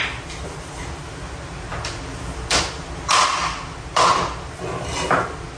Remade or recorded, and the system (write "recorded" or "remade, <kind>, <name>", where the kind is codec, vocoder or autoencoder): recorded